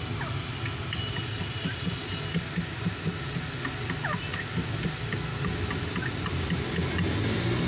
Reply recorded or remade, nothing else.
recorded